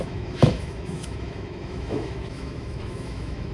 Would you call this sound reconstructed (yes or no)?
yes